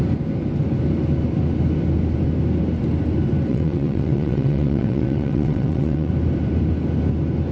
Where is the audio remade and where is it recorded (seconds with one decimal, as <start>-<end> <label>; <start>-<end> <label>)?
0.0-3.5 recorded; 3.5-6.1 remade; 6.1-7.5 recorded